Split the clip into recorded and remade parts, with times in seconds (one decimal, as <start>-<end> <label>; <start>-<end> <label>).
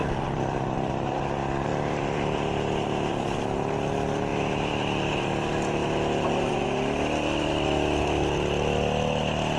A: 0.0-1.2 remade; 1.2-1.7 recorded; 1.7-3.2 remade; 3.2-4.3 recorded; 4.3-5.3 remade; 5.3-9.6 recorded